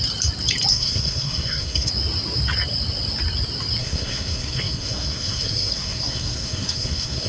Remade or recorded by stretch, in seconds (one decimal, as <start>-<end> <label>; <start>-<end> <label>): 0.0-0.7 recorded; 0.7-1.9 remade; 1.9-3.8 recorded; 3.8-7.3 remade